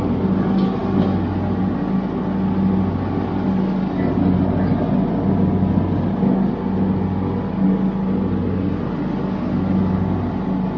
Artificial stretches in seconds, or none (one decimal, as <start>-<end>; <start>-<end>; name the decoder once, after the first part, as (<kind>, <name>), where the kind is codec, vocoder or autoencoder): none